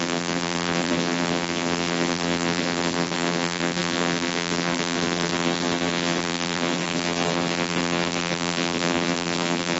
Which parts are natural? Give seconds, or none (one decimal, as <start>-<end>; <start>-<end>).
none